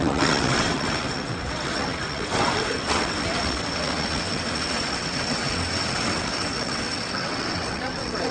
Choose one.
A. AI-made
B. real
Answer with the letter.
A